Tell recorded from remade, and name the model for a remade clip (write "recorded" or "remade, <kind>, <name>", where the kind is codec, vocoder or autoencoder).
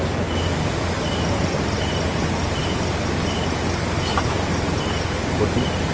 recorded